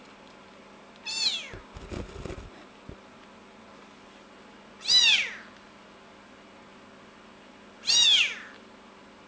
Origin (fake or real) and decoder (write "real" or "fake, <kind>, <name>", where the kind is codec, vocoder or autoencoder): real